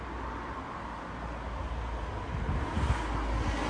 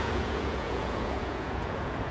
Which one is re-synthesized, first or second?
second